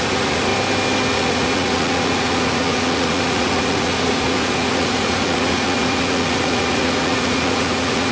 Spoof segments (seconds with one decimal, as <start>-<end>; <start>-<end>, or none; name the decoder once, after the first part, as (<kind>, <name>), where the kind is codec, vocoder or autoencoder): 0.0-0.5 (vocoder, Vocos); 1.1-8.1